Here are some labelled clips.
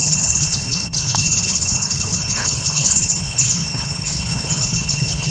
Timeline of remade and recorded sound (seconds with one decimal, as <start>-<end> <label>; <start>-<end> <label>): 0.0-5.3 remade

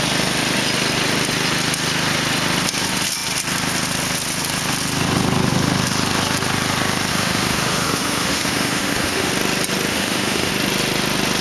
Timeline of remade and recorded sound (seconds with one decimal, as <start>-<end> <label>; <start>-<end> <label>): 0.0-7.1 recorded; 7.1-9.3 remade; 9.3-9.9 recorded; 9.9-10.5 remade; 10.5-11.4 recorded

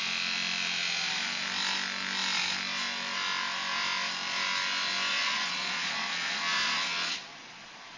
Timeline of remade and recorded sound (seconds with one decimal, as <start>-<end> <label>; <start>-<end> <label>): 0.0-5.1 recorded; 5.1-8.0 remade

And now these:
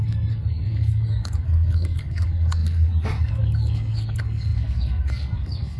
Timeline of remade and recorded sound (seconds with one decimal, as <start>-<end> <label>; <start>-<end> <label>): 0.0-5.8 remade

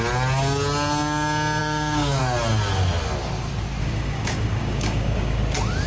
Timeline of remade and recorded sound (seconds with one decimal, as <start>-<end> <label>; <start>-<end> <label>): 0.0-1.6 recorded; 1.6-2.2 remade; 2.2-3.8 recorded; 3.8-5.4 remade; 5.4-5.9 recorded

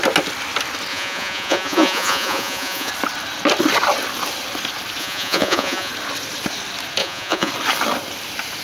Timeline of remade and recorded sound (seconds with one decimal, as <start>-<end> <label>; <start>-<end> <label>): 0.0-0.9 recorded; 0.9-2.9 remade; 2.9-5.0 recorded; 5.0-5.9 remade; 5.9-7.0 recorded; 7.0-7.5 remade; 7.5-8.6 recorded